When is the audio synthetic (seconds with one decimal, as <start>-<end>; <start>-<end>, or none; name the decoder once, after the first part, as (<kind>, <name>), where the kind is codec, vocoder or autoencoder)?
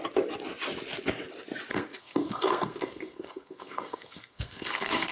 1.7-5.1 (codec, SNAC)